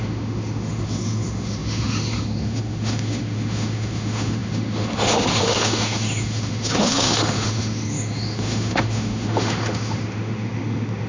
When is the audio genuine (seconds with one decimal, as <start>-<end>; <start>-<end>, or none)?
none